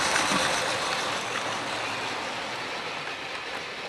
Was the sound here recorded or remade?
recorded